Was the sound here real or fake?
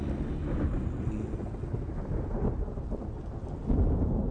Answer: real